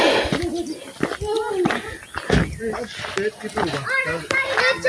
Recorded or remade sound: recorded